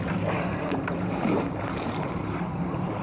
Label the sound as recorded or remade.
remade